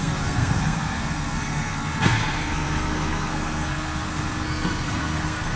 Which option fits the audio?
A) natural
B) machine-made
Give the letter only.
B